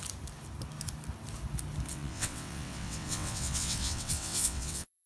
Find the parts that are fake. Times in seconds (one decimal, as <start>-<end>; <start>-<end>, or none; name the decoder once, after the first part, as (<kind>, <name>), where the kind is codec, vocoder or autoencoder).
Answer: 1.9-5.1 (vocoder, WaveNeXt)